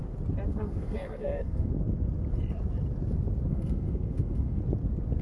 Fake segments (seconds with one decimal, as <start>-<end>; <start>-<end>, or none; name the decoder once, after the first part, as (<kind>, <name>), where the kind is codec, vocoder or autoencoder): 0.5-1.7 (codec, SNAC); 3.5-4.6